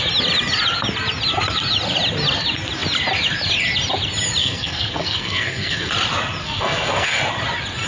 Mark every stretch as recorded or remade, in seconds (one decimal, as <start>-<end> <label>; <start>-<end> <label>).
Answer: 0.0-4.4 recorded; 4.4-5.9 remade; 5.9-6.4 recorded; 6.4-7.2 remade; 7.2-7.9 recorded